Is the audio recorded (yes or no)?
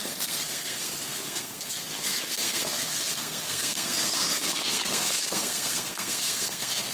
no